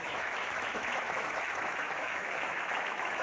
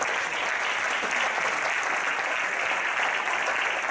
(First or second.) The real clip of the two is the second